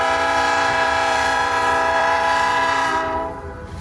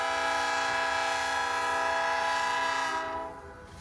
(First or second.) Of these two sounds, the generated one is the first